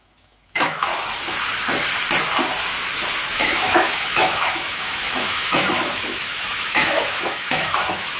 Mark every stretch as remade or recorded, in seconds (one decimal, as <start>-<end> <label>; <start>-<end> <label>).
0.0-0.9 remade; 0.9-3.3 recorded; 3.3-8.2 remade